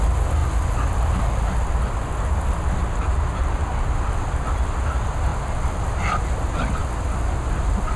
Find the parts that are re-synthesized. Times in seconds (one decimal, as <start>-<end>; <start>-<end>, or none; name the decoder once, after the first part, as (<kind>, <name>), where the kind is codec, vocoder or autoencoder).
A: none

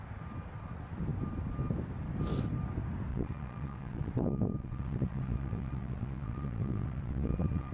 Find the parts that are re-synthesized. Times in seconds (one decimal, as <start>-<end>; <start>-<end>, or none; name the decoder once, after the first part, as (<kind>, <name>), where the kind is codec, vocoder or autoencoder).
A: 3.1-7.7 (vocoder, WaveNeXt)

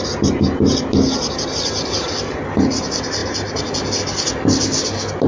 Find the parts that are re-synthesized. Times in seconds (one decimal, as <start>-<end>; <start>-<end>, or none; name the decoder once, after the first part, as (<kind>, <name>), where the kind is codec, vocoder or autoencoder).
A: none

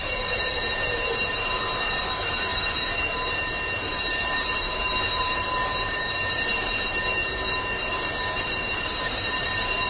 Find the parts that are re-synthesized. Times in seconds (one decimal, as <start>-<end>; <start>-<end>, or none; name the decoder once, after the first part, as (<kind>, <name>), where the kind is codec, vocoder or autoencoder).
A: 0.0-9.9 (vocoder, BigVGAN v2)

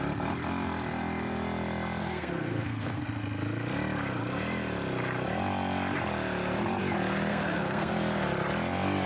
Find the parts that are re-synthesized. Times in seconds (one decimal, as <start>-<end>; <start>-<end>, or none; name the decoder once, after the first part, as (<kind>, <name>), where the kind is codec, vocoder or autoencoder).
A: 2.0-3.0 (codec, SNAC); 7.3-7.9

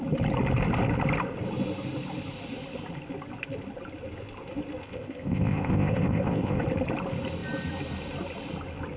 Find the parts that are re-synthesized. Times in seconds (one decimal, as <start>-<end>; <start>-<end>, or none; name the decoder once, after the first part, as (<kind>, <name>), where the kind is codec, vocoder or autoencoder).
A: 4.8-6.6 (codec, ZipCodec)

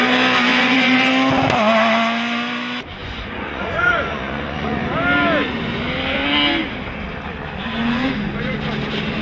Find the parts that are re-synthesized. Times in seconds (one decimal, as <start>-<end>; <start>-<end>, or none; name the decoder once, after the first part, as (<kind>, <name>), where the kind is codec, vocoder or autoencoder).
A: 0.5-1.1 (vocoder, Vocos); 3.0-4.9; 7.8-8.6

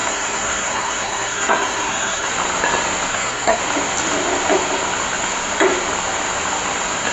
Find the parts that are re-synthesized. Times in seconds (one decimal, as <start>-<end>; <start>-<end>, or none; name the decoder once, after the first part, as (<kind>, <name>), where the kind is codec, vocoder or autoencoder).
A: 0.0-2.3 (codec, SNAC); 3.1-3.6